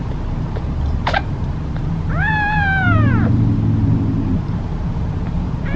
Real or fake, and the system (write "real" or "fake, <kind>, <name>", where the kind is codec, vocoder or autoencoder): fake, vocoder, BigVGAN v2